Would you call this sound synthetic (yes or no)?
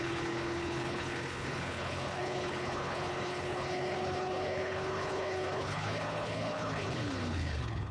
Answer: yes